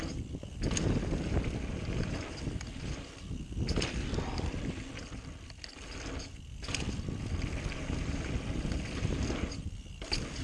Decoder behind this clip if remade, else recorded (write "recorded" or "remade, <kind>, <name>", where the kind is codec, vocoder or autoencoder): recorded